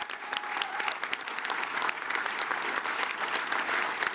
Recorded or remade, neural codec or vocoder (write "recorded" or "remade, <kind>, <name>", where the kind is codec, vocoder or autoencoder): recorded